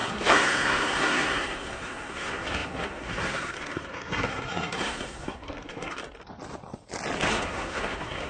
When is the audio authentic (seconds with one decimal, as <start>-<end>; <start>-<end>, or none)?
6.0-7.3